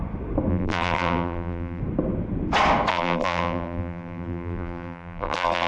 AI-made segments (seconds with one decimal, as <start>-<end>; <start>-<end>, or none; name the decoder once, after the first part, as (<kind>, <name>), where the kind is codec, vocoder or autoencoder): 0.5-1.8 (vocoder, BigVGAN v2); 2.9-5.7